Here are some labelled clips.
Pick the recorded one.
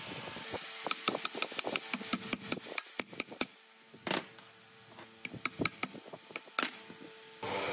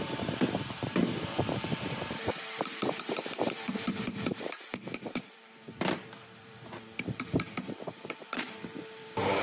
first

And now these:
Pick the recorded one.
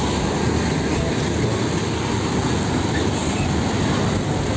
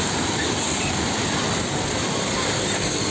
first